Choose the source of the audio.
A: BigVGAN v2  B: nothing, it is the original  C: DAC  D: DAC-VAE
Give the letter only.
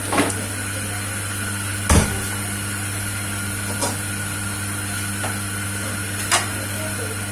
B